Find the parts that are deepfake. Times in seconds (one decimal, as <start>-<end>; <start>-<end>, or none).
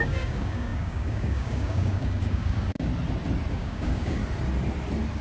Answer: 0.0-2.9; 3.5-4.2